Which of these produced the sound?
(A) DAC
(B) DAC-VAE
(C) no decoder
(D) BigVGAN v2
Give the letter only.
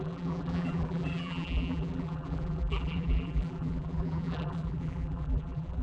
D